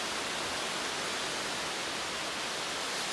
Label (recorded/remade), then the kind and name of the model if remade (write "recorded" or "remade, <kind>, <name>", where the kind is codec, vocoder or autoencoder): recorded